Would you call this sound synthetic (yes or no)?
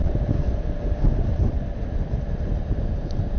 yes